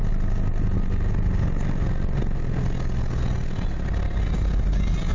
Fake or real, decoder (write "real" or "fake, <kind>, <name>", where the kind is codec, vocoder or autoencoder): real